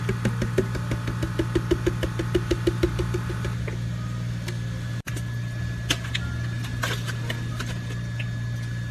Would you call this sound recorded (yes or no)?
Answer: yes